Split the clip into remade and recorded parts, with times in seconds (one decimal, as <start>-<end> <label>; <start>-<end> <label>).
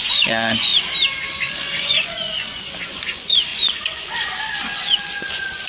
0.0-0.7 remade; 0.7-1.3 recorded; 1.3-5.7 remade